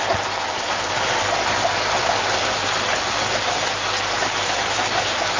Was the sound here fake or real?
real